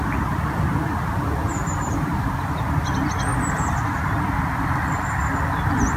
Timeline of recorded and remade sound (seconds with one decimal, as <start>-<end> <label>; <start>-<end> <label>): 0.0-1.5 recorded; 1.5-2.3 remade; 2.3-3.3 recorded; 3.3-3.8 remade; 3.8-6.0 recorded

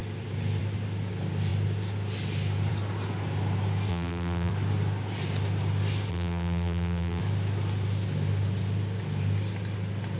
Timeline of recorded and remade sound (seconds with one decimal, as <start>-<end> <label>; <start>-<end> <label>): 0.0-3.9 recorded; 3.9-4.5 remade; 4.5-6.1 recorded; 6.1-7.2 remade; 7.2-10.2 recorded

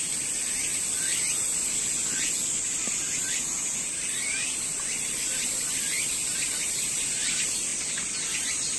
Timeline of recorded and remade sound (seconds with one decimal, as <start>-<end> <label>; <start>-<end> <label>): 0.0-0.7 recorded; 0.7-1.2 remade; 1.2-3.2 recorded; 3.2-6.6 remade; 6.6-7.7 recorded; 7.7-8.2 remade; 8.2-8.8 recorded

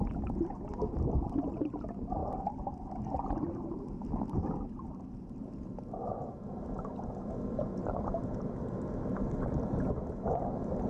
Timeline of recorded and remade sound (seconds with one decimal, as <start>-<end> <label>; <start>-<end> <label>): 0.0-2.2 recorded; 2.2-3.7 remade; 3.7-7.8 recorded; 7.8-8.4 remade; 8.4-10.9 recorded

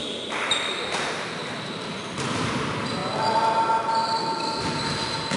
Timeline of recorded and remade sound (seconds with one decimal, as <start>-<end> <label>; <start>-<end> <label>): 0.0-3.0 remade; 3.0-4.6 recorded; 4.6-5.4 remade

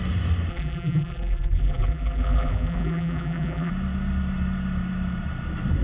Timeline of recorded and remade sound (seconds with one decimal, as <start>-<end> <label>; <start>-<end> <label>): 0.0-0.5 recorded; 0.5-3.7 remade; 3.7-5.8 recorded

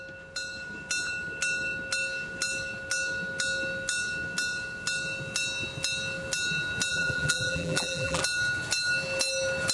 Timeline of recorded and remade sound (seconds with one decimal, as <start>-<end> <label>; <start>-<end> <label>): 0.0-6.9 recorded; 6.9-8.2 remade; 8.2-9.7 recorded

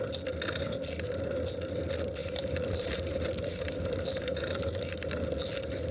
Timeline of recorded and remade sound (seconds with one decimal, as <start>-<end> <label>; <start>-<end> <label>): 0.0-2.2 recorded; 2.2-5.1 remade; 5.1-5.9 recorded